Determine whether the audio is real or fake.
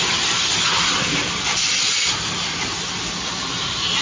real